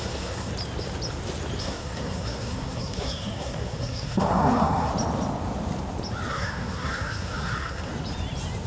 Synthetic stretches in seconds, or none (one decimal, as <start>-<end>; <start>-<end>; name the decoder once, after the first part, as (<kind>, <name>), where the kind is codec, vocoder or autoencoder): 0.0-0.5 (codec, SNAC); 1.6-4.9; 6.3-7.9